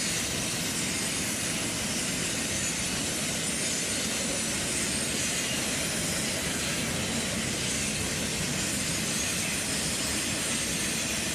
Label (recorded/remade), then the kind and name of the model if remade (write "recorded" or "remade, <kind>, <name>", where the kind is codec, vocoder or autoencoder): recorded